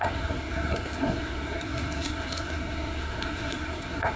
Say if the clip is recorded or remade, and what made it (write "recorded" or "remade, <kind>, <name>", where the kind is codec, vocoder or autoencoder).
remade, codec, SNAC